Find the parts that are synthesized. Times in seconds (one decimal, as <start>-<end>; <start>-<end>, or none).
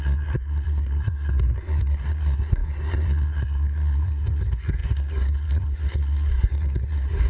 0.0-7.3